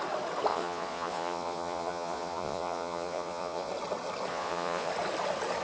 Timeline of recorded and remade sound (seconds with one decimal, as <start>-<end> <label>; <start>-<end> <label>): 0.0-0.5 recorded; 0.5-3.7 remade; 3.7-4.3 recorded; 4.3-4.9 remade; 4.9-5.6 recorded